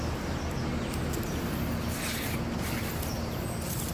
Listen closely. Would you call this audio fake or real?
real